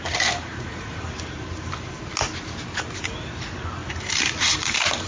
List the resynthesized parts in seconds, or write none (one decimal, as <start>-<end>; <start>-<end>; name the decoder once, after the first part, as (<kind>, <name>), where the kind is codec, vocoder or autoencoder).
0.4-1.0 (vocoder, Vocos)